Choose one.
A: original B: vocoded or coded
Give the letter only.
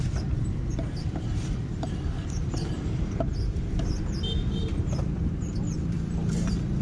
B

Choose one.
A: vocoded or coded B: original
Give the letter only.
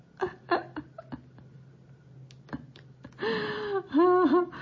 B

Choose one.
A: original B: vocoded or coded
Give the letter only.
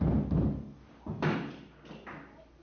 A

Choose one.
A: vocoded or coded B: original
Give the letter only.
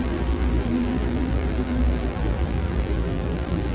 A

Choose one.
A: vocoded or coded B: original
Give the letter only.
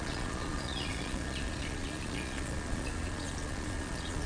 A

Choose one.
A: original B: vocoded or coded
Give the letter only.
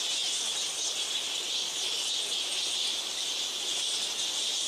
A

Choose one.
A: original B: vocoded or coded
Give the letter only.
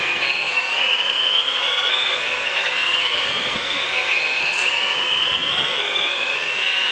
B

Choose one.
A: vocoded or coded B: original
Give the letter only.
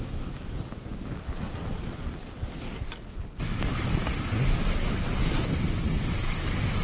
B